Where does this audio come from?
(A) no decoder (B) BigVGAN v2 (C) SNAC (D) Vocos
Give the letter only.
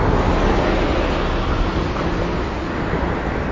A